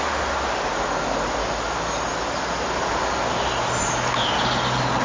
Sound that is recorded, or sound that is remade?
recorded